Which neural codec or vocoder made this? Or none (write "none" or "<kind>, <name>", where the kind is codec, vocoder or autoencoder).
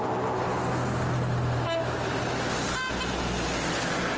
none